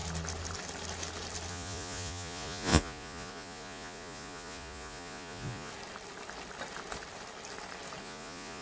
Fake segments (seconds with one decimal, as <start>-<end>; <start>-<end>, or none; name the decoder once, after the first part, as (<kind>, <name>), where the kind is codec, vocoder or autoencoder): 1.5-5.7 (vocoder, Vocos); 8.0-8.6